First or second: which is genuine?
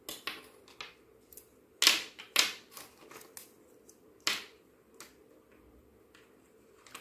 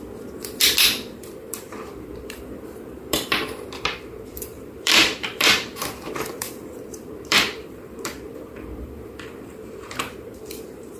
first